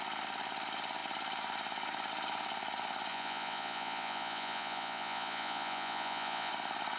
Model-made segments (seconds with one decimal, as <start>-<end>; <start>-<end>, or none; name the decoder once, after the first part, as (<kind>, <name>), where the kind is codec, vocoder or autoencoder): 3.1-6.5 (vocoder, Vocos)